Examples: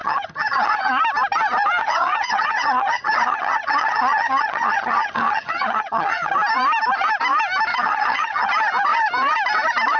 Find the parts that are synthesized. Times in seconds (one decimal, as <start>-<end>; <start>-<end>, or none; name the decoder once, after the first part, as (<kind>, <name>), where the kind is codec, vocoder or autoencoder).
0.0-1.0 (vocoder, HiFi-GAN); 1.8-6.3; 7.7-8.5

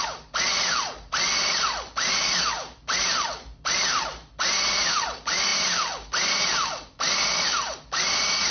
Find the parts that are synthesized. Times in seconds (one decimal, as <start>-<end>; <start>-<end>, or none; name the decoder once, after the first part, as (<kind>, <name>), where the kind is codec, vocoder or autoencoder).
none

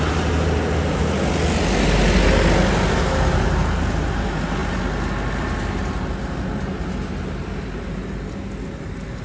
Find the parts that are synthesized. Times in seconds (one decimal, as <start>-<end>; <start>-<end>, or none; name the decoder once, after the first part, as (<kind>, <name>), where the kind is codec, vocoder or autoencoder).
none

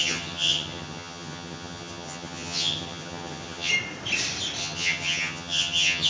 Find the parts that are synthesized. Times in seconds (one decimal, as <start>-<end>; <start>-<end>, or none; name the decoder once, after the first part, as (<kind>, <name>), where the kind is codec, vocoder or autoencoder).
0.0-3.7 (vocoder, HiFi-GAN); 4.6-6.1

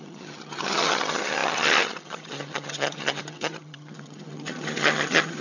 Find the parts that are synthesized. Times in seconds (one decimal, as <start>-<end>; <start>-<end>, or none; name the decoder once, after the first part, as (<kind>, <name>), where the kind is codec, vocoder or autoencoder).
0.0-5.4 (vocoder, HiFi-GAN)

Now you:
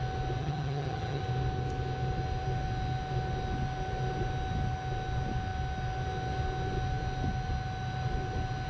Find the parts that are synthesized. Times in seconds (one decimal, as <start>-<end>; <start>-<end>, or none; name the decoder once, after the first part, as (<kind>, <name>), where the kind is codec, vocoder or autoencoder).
0.4-1.2 (vocoder, HiFi-GAN)

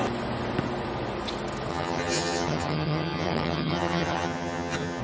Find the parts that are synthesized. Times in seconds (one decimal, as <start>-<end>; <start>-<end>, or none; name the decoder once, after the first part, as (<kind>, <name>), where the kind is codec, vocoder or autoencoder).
1.7-5.0 (vocoder, HiFi-GAN)

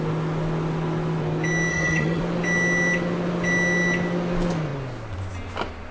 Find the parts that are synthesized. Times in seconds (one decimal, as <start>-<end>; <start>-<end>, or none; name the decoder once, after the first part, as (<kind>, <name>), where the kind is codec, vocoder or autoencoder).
1.7-2.2 (vocoder, HiFi-GAN)